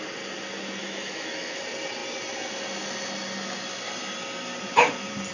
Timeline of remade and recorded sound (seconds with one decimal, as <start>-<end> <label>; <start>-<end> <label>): 0.0-0.8 recorded; 0.8-1.6 remade; 1.6-5.3 recorded